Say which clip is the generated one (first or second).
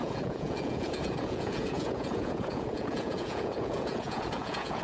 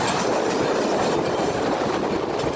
first